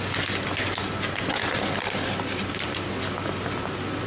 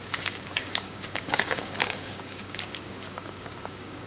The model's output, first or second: second